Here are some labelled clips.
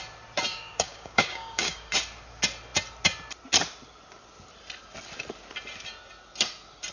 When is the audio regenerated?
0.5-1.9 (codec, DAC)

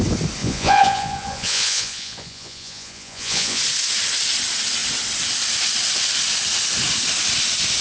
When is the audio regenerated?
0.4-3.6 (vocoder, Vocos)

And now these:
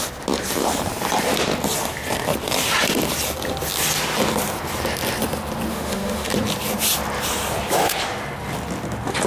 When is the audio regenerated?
5.7-6.3 (autoencoder, DAC-VAE)

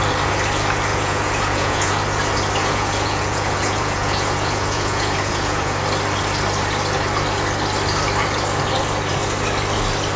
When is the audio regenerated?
0.9-1.9 (vocoder, Vocos); 2.6-5.8